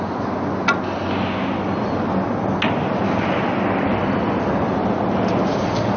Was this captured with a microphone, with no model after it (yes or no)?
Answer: yes